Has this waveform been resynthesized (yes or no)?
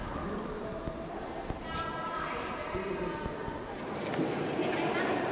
no